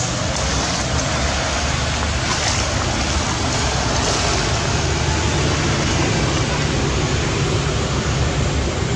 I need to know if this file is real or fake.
real